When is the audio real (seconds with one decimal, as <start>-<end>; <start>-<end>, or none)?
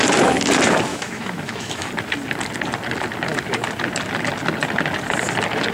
0.0-0.9; 1.9-5.7